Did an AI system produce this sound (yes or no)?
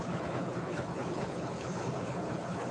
yes